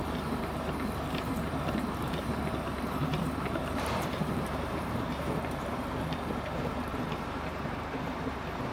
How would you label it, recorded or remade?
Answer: remade